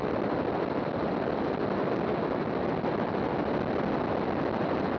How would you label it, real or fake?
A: real